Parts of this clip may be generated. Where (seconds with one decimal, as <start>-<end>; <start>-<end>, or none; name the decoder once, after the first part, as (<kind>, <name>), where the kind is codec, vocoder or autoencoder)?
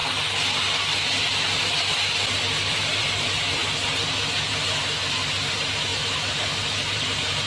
2.4-3.6 (vocoder, BigVGAN v2); 4.5-7.5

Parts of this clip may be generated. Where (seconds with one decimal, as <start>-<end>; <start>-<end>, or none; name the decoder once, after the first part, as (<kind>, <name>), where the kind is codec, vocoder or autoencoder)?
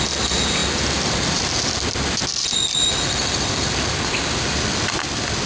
0.0-0.6 (vocoder, BigVGAN v2); 2.4-5.5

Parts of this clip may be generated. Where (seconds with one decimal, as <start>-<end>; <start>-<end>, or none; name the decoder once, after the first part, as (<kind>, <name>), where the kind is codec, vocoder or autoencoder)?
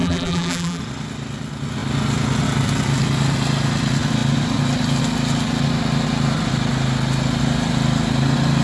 0.0-0.8 (vocoder, BigVGAN v2)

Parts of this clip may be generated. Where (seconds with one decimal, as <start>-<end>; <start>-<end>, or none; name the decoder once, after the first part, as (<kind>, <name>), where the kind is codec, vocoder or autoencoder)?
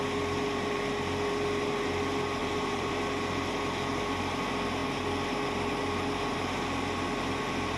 2.4-2.9 (vocoder, BigVGAN v2)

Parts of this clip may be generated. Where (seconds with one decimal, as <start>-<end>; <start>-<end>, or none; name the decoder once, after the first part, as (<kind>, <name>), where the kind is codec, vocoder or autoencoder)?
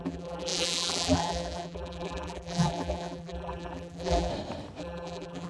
0.0-4.3 (vocoder, BigVGAN v2); 4.8-5.5